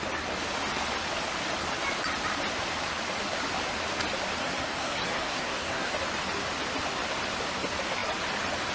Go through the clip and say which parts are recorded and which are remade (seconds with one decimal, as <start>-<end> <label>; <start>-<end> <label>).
0.0-4.4 recorded; 4.4-5.9 remade; 5.9-8.7 recorded